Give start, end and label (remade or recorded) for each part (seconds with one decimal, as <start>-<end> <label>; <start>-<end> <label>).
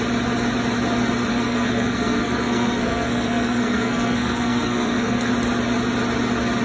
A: 0.0-1.3 recorded; 1.3-5.3 remade; 5.3-6.6 recorded